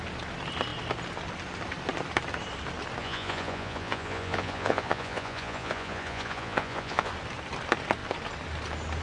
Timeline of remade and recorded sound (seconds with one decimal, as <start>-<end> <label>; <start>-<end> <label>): 0.0-3.0 recorded; 3.0-7.1 remade; 7.1-9.0 recorded

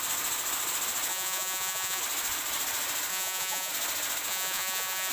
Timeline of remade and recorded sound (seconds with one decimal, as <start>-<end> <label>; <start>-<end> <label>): 0.0-1.1 recorded; 1.1-2.0 remade; 2.0-3.1 recorded; 3.1-3.7 remade; 3.7-4.3 recorded; 4.3-5.1 remade

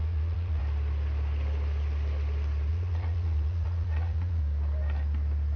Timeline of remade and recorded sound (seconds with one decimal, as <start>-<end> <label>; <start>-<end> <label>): 0.0-0.6 remade; 0.6-2.7 recorded; 2.7-4.4 remade; 4.4-5.6 recorded

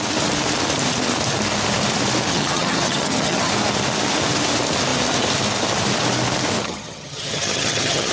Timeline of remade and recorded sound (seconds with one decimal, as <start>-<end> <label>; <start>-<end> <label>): 0.0-2.3 recorded; 2.3-3.5 remade; 3.5-6.6 recorded; 6.6-8.1 remade

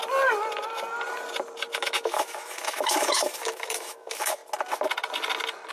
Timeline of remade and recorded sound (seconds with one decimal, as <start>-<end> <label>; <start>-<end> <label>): 0.0-1.7 recorded; 1.7-4.4 remade; 4.4-5.7 recorded

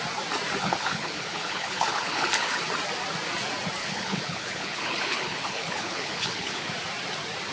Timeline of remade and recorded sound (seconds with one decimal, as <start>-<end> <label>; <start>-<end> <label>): 0.0-0.6 recorded; 0.6-2.6 remade; 2.6-3.8 recorded; 3.8-6.7 remade; 6.7-7.5 recorded

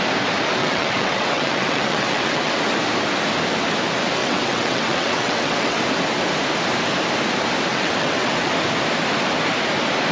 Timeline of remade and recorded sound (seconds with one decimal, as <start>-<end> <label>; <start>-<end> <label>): 0.0-0.6 recorded; 0.6-2.6 remade; 2.6-4.2 recorded; 4.2-5.8 remade; 5.8-7.7 recorded; 7.7-8.5 remade; 8.5-10.1 recorded

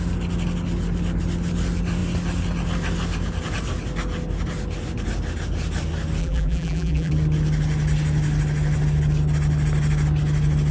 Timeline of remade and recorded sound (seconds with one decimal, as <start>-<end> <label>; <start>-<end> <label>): 0.0-6.2 recorded; 6.2-7.1 remade; 7.1-10.7 recorded